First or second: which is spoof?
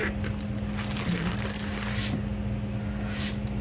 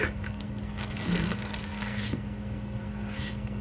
second